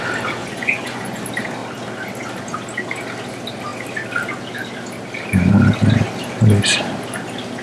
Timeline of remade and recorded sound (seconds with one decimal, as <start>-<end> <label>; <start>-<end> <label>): 0.0-0.4 recorded; 0.4-1.2 remade; 1.2-7.6 recorded

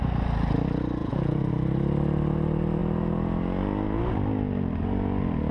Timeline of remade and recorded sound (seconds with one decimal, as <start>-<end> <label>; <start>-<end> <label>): 0.0-1.0 recorded; 1.0-1.5 remade; 1.5-5.5 recorded

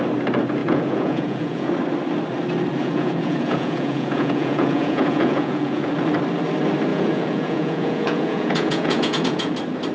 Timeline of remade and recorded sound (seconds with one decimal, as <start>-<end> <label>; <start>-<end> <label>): 0.0-0.6 recorded; 0.6-1.7 remade; 1.7-2.8 recorded; 2.8-5.9 remade; 5.9-6.9 recorded; 6.9-9.5 remade; 9.5-9.9 recorded

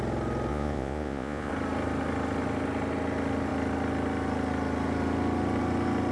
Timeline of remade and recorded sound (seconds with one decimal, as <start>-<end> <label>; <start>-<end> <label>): 0.0-0.5 recorded; 0.5-1.5 remade; 1.5-6.1 recorded

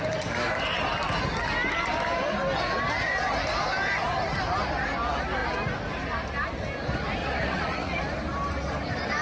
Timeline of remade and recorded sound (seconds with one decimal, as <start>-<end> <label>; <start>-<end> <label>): 0.0-7.2 recorded; 7.2-8.0 remade; 8.0-9.2 recorded